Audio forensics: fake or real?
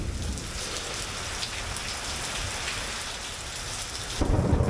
real